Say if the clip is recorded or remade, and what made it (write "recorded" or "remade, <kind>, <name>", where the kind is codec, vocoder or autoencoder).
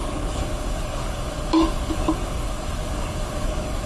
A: remade, codec, DAC